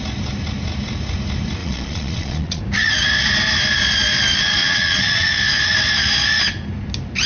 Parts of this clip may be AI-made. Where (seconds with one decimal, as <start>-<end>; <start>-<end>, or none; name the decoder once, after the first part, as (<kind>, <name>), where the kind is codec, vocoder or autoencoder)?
1.6-2.6 (vocoder, Vocos); 4.6-5.3